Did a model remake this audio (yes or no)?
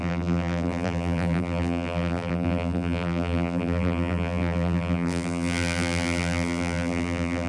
yes